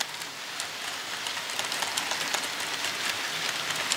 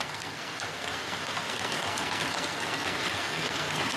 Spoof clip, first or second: second